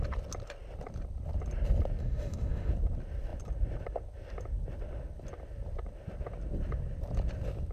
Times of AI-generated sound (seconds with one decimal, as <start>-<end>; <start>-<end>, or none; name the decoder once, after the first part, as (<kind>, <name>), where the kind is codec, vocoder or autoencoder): 2.0-2.7 (autoencoder, DAC-VAE)